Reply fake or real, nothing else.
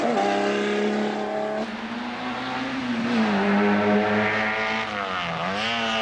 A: real